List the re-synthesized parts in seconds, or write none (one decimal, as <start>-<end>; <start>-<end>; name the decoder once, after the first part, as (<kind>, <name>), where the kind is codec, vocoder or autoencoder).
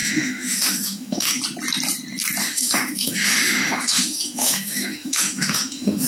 0.0-1.4 (autoencoder, DAC-VAE); 2.4-6.1